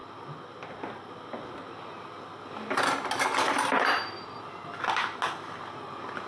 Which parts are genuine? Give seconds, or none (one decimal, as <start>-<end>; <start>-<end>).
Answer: 0.0-6.3